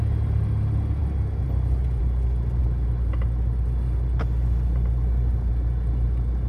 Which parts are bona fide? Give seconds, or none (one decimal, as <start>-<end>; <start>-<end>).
0.0-6.5